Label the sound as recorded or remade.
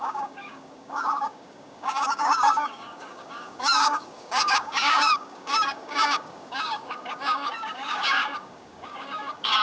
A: remade